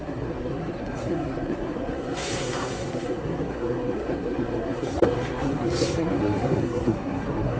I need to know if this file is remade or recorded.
remade